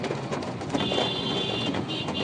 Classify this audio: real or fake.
fake